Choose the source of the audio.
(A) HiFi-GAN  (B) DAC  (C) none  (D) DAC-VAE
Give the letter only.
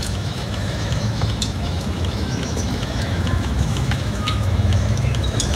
D